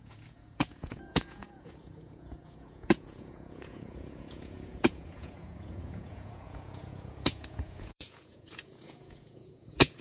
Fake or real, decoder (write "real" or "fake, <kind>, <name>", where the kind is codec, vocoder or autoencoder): fake, vocoder, Vocos